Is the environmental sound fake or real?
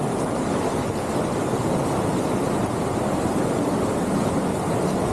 real